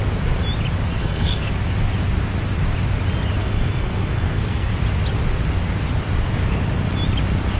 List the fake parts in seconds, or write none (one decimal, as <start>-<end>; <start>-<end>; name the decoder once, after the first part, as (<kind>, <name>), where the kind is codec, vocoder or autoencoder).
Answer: 1.0-1.5 (codec, SNAC); 3.4-4.7